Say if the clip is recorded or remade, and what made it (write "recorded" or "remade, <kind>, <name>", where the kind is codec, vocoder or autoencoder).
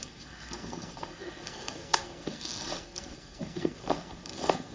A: remade, codec, SNAC